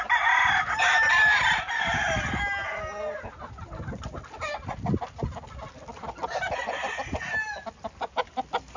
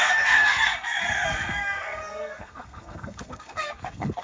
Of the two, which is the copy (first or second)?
second